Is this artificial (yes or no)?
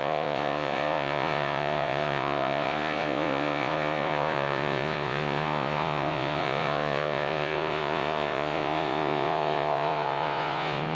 yes